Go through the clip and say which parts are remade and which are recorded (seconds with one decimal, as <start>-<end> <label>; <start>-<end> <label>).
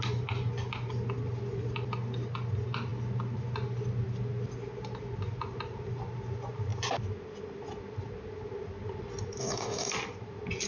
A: 0.0-9.4 recorded; 9.4-9.9 remade; 9.9-10.7 recorded